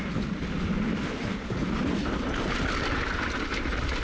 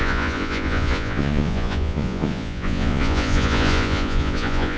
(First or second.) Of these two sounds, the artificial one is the second